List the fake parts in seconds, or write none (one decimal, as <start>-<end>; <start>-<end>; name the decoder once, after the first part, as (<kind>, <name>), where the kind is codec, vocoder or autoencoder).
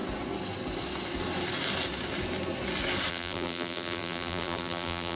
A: 3.1-5.2 (vocoder, BigVGAN v2)